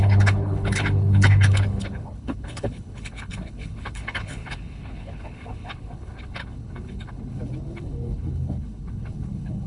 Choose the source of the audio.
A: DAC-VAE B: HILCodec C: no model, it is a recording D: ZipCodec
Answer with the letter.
B